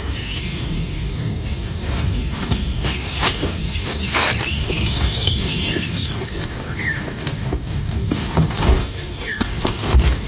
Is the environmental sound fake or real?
fake